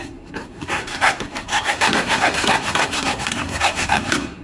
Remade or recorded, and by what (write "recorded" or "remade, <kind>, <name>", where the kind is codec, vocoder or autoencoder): remade, codec, SNAC